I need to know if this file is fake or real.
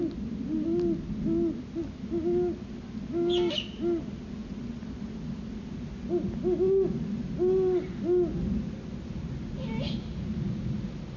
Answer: real